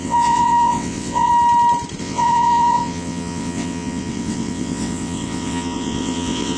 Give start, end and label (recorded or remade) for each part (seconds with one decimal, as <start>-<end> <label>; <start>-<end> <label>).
0.0-1.3 remade; 1.3-2.0 recorded; 2.0-6.6 remade